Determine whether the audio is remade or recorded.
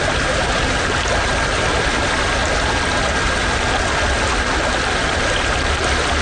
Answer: recorded